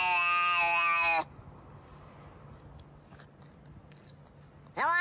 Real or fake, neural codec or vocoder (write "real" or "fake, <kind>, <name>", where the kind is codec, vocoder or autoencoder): real